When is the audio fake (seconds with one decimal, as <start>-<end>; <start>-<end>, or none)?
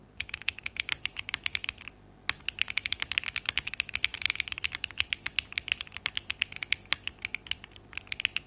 0.0-1.5; 4.1-4.7